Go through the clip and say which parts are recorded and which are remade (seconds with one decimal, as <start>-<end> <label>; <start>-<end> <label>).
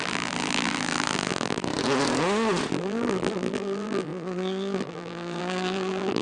0.0-1.7 remade; 1.7-2.7 recorded; 2.7-6.2 remade